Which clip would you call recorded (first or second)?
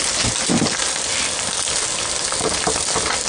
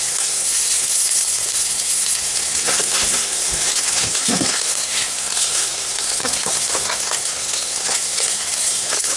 first